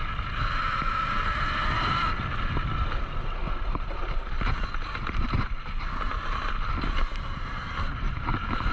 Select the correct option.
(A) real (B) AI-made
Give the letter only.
A